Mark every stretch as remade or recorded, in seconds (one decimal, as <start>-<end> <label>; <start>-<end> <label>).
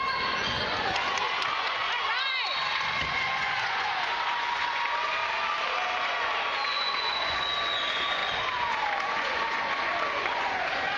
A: 0.0-5.2 remade; 5.2-6.0 recorded; 6.0-11.0 remade